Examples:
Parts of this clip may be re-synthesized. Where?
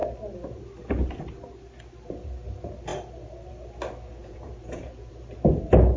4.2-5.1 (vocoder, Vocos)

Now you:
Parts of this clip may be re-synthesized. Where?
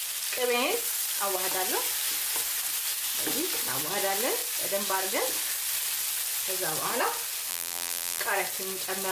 7.5-8.2 (vocoder, BigVGAN v2)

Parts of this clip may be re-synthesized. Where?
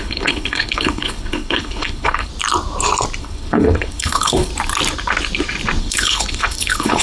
0.0-2.3 (codec, HILCodec); 3.2-4.5; 5.8-7.0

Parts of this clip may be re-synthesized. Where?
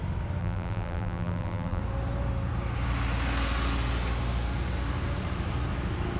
0.4-1.8 (vocoder, BigVGAN v2)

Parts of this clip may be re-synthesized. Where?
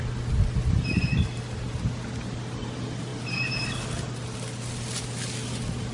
none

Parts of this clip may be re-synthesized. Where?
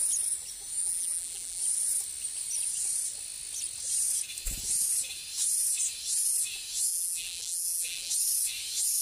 0.8-1.6 (vocoder, BigVGAN v2); 6.9-8.1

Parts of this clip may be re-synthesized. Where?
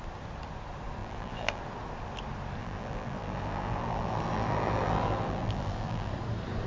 1.0-1.6 (vocoder, BigVGAN v2); 2.6-6.1